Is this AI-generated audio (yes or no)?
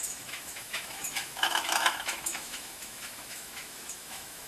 yes